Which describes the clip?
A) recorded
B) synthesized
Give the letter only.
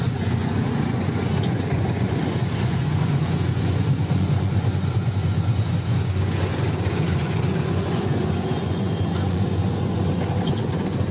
B